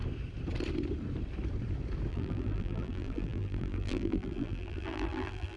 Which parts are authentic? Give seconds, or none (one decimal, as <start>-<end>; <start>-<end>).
0.0-2.1